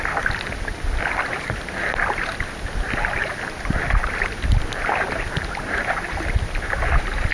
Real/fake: real